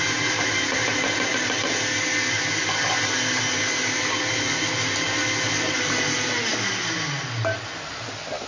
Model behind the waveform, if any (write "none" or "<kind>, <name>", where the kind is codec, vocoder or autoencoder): none